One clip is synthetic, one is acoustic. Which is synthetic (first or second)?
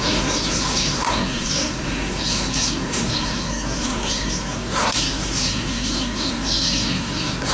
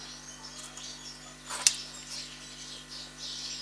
first